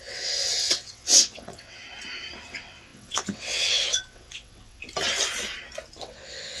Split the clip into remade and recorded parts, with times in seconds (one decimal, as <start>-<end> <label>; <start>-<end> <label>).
0.0-1.8 remade; 1.8-2.5 recorded; 2.5-4.8 remade; 4.8-6.0 recorded; 6.0-6.6 remade